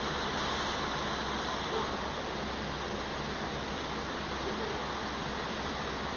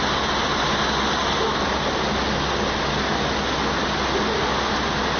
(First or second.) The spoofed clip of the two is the first